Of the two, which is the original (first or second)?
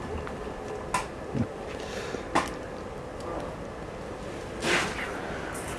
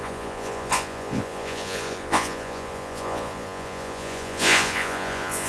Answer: first